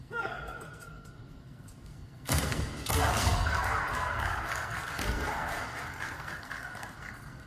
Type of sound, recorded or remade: remade